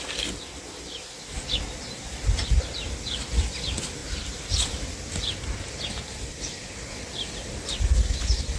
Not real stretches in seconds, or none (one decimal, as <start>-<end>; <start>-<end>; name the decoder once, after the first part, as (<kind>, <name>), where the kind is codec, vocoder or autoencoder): none

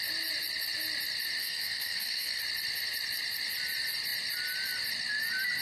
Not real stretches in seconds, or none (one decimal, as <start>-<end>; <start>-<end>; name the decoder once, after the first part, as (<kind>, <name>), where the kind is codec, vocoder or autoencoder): 1.4-2.4 (codec, SNAC)

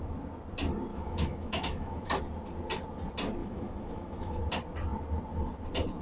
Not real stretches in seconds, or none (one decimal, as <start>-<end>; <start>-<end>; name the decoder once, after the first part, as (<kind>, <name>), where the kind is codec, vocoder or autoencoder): 0.9-2.2 (autoencoder, DAC-VAE); 3.4-4.4

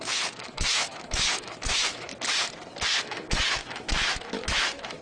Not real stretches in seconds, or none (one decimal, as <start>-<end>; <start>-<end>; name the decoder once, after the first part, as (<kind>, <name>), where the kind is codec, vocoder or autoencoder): 0.0-2.1 (autoencoder, DAC-VAE); 3.0-5.0

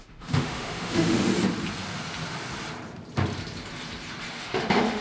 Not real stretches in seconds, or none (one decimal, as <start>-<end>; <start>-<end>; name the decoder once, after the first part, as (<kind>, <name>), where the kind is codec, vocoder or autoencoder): 0.0-1.3 (autoencoder, DAC-VAE); 4.3-5.0

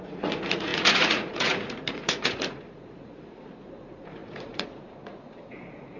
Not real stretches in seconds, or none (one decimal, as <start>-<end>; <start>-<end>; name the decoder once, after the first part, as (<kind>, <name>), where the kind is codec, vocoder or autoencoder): 0.0-6.0 (vocoder, Vocos)